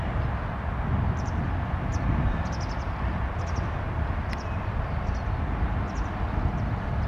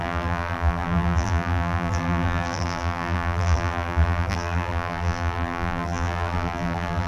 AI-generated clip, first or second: second